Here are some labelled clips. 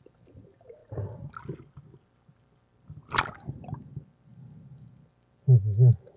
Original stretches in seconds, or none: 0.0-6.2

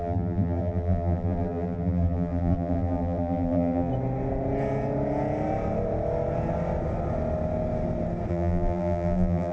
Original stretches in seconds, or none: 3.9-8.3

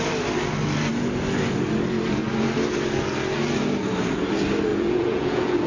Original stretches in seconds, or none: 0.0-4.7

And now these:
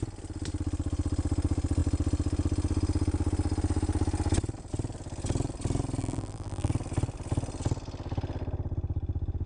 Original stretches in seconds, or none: 0.0-6.0; 6.7-9.5

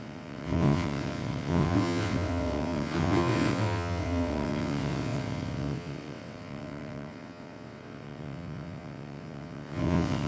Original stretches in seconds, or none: none

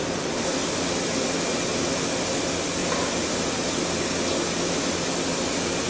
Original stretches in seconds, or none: 0.0-5.9

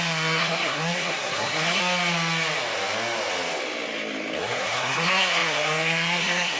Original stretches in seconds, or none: 1.8-4.4